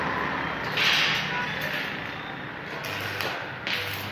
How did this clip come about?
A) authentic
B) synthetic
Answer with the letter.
A